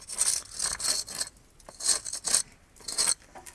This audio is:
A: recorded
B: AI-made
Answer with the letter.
A